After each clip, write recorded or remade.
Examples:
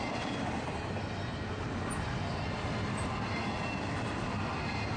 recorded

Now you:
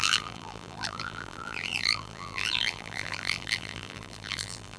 remade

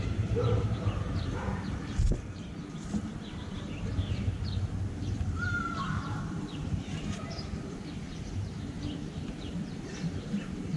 remade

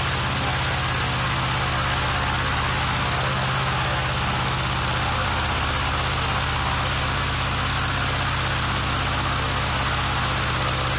recorded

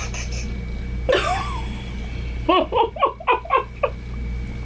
recorded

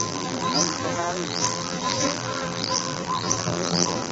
remade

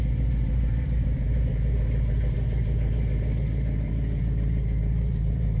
remade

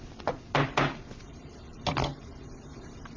recorded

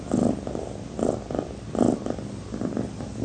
recorded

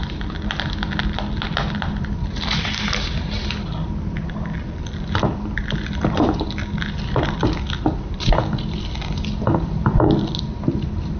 remade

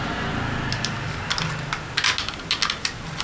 recorded